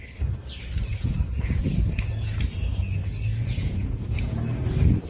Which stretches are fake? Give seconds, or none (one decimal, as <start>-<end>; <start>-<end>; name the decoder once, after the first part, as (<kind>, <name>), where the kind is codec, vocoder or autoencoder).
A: 0.9-1.6 (vocoder, Vocos); 3.3-4.3